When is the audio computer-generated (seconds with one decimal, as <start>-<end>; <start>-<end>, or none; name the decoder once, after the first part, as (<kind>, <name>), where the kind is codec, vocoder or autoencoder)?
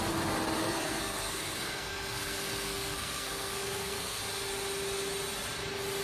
0.6-4.2 (codec, SNAC)